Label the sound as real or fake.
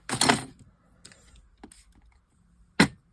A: real